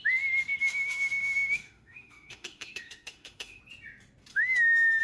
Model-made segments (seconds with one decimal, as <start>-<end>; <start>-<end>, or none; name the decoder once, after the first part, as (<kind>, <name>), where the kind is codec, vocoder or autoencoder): 0.6-3.6 (autoencoder, DAC-VAE); 4.3-5.0